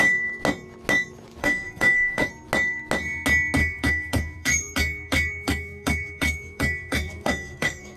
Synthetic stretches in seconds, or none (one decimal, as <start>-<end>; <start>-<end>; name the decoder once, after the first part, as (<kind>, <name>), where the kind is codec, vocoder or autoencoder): 1.4-2.3 (codec, SNAC); 3.6-8.0